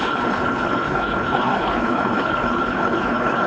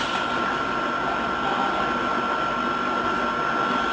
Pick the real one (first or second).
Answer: second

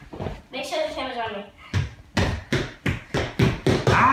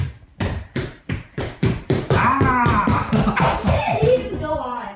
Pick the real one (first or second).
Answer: first